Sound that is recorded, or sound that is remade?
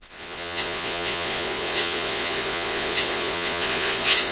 remade